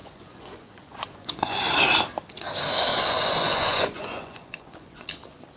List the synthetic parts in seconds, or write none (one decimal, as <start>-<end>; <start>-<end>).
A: 0.0-1.6; 2.9-5.1

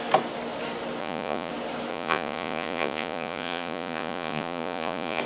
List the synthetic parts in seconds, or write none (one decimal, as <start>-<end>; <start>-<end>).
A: 1.0-1.5; 1.9-5.2